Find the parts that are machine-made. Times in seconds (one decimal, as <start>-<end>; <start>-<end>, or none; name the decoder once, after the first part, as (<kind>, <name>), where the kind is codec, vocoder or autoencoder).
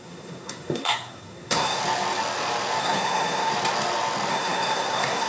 0.0-1.8 (codec, SNAC); 2.8-3.5; 4.3-5.3